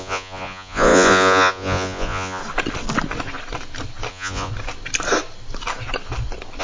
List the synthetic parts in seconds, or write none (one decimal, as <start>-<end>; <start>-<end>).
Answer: 0.0-2.4; 4.1-4.5